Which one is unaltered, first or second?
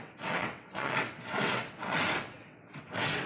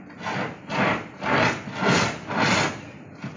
second